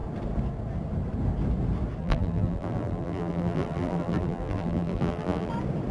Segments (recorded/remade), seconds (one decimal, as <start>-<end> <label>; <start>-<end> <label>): 0.0-2.0 recorded; 2.0-5.5 remade; 5.5-5.9 recorded